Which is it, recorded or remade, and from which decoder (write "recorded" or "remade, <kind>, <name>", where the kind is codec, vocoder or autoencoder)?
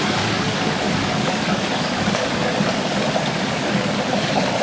remade, codec, DAC